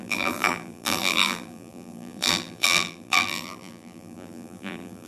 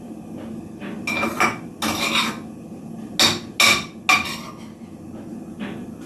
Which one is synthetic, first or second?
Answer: first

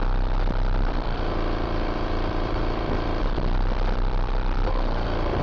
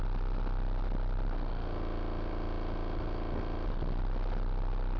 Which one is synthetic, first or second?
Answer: first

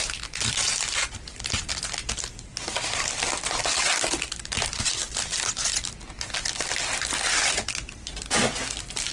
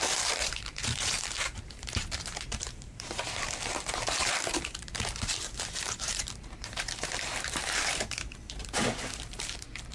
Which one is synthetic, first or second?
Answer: second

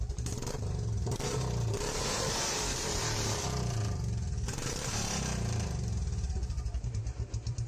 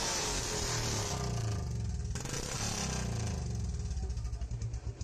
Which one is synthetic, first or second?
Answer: first